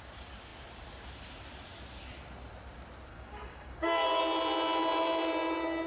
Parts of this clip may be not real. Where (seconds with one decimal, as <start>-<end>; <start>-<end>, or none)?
3.1-4.2